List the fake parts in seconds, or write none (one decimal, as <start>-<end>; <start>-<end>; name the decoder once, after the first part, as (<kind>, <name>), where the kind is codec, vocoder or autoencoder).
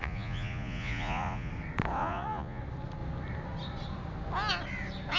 0.0-1.5 (vocoder, Vocos); 2.0-2.6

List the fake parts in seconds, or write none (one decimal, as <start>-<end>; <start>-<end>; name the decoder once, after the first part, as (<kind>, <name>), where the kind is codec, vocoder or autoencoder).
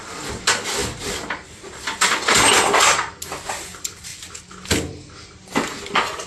none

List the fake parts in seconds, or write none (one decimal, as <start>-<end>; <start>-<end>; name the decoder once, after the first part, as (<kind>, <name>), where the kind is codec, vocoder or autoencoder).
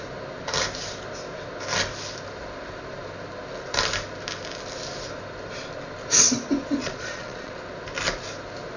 6.8-7.5 (vocoder, Vocos)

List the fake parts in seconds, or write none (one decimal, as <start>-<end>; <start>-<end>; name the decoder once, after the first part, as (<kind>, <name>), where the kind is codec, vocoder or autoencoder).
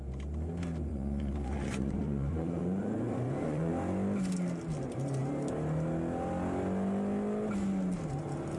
0.9-3.7 (vocoder, Vocos)